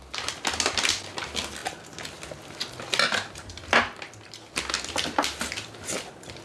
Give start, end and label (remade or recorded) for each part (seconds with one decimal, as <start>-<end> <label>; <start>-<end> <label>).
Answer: 0.0-6.4 recorded